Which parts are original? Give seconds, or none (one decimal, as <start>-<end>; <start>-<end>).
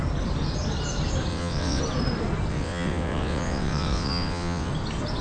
0.0-1.3; 1.8-2.5; 4.7-5.2